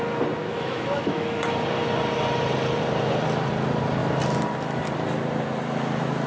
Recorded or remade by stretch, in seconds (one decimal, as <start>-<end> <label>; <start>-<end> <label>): 0.0-0.4 recorded; 0.4-1.4 remade; 1.4-6.3 recorded